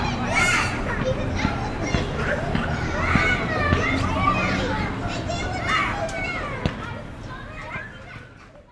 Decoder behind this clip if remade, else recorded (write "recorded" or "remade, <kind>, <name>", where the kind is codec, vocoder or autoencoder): recorded